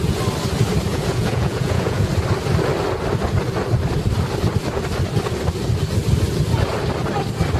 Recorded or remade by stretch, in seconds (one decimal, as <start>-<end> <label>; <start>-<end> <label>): 0.0-0.9 recorded; 0.9-2.1 remade; 2.1-7.6 recorded